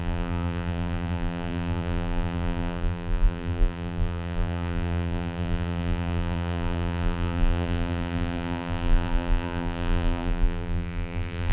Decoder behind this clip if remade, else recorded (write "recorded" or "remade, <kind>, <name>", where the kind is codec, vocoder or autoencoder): remade, vocoder, BigVGAN v2